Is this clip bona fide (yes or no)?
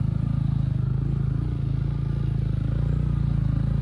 yes